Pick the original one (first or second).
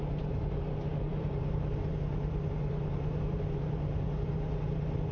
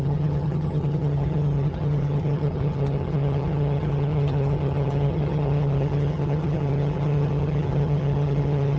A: first